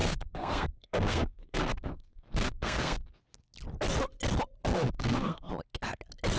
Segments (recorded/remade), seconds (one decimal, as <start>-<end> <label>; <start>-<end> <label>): 0.0-3.2 remade; 3.2-4.7 recorded; 4.7-5.5 remade; 5.5-6.4 recorded